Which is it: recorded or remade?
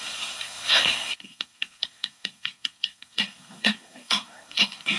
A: remade